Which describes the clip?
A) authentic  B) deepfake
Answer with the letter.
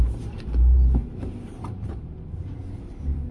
B